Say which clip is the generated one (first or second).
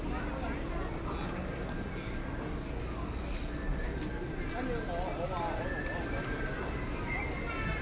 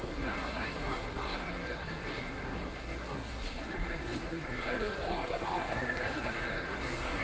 second